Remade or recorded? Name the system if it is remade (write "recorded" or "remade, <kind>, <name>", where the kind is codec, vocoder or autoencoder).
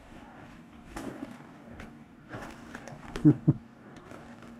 remade, codec, DAC